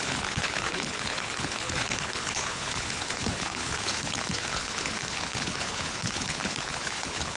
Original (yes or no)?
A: no